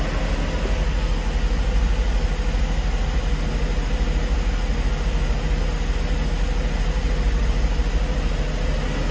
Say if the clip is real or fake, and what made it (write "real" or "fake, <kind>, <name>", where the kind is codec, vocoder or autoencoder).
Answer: real